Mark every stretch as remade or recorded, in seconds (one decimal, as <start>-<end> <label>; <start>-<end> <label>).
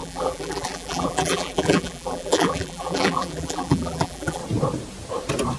0.0-4.4 remade; 4.4-5.6 recorded